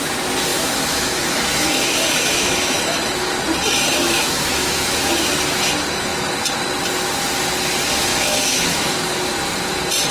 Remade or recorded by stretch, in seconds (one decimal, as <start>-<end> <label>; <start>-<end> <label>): 0.0-0.5 recorded; 0.5-3.4 remade; 3.4-3.9 recorded; 3.9-5.3 remade; 5.3-8.1 recorded; 8.1-9.0 remade; 9.0-10.1 recorded